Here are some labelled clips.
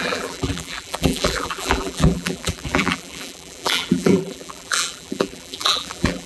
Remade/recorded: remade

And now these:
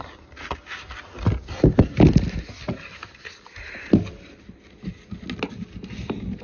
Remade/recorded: recorded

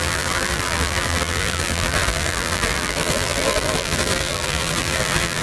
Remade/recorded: remade